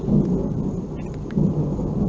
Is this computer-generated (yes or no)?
no